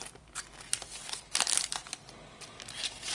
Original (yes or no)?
yes